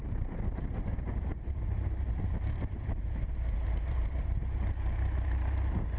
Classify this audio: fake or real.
fake